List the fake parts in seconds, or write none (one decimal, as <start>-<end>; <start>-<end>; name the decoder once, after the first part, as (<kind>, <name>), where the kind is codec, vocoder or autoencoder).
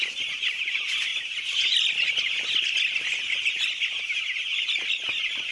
none